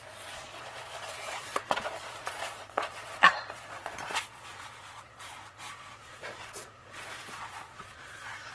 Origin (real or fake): fake